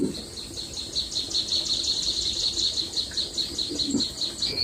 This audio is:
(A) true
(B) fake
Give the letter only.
A